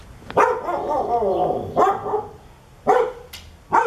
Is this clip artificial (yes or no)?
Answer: no